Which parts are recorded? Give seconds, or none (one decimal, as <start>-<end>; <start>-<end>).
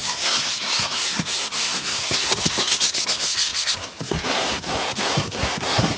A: none